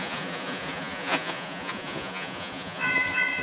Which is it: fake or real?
fake